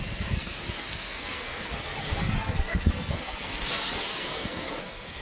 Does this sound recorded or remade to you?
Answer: remade